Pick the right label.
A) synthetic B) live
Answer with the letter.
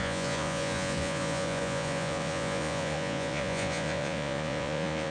A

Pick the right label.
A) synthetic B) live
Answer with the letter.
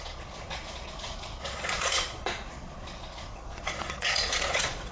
A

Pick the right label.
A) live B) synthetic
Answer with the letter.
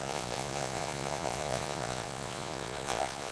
B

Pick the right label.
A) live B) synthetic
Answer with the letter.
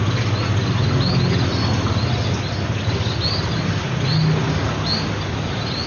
A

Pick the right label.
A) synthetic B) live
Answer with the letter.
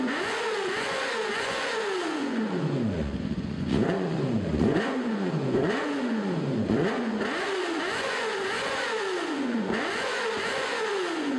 A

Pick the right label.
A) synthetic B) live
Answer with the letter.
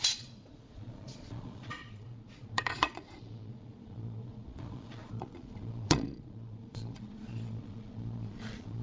A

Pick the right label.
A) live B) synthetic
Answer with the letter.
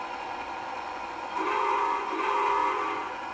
B